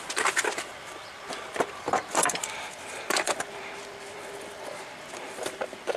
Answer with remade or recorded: remade